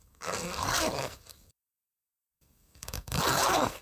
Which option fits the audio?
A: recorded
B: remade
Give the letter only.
B